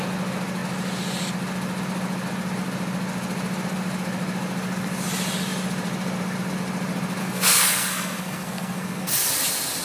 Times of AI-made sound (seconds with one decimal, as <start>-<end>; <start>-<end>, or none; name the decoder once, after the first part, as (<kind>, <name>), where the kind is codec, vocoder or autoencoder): 7.2-9.1 (codec, SNAC)